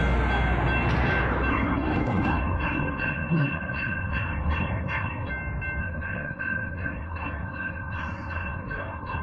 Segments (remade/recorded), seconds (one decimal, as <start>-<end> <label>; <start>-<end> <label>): 0.0-1.5 recorded; 1.5-5.3 remade; 5.3-5.8 recorded; 5.8-9.2 remade